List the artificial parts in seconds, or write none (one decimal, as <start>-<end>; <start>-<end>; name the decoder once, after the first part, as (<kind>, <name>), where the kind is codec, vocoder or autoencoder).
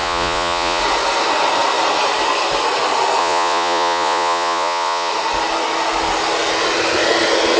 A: 0.0-0.8 (vocoder, Vocos); 3.2-5.1